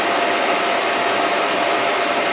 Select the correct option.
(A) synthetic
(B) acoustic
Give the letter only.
B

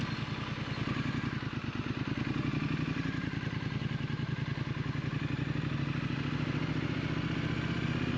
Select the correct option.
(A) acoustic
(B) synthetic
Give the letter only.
A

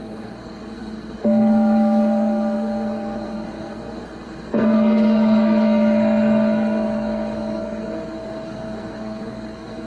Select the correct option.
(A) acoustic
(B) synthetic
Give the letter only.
B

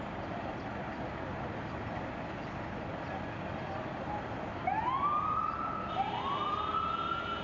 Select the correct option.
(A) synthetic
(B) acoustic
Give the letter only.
B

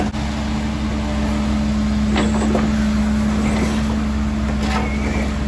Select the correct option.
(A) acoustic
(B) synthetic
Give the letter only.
A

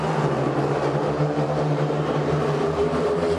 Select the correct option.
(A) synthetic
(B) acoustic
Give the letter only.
A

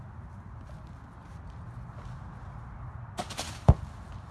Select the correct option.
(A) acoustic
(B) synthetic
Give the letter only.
A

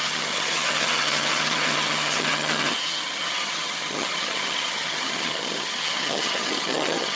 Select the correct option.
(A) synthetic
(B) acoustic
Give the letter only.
A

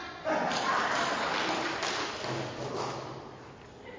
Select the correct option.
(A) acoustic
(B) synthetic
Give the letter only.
A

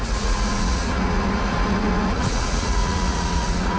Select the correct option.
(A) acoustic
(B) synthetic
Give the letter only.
B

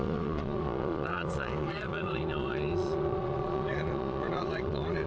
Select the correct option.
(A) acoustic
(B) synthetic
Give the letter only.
B